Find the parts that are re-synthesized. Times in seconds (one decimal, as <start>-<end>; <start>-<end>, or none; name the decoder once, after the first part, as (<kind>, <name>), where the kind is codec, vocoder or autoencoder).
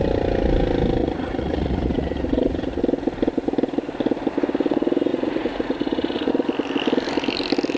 1.0-2.8 (vocoder, Vocos); 5.1-6.3